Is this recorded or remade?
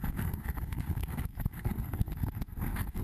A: remade